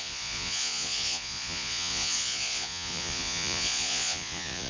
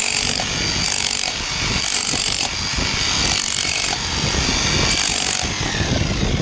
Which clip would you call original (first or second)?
second